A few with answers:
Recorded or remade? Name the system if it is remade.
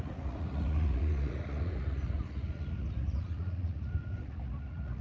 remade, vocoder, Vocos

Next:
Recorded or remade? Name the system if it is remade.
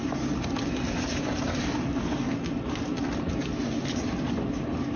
recorded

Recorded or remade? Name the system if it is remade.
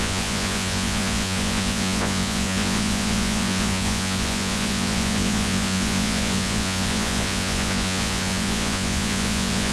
remade, vocoder, Vocos